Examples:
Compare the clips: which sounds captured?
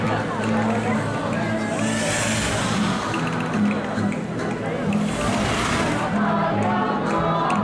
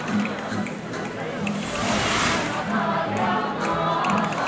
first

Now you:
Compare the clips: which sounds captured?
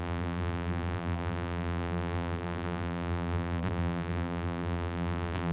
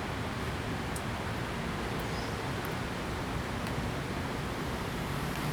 second